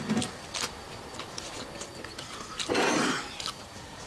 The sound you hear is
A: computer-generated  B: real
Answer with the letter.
B